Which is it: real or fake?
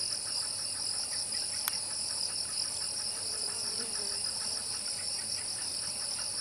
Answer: fake